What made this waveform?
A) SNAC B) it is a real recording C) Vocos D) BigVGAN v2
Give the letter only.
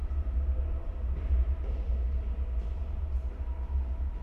B